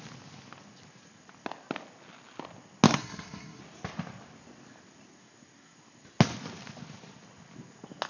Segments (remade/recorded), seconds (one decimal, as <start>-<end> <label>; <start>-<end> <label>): 0.0-2.9 recorded; 2.9-3.6 remade; 3.6-8.1 recorded